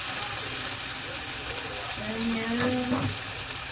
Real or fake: real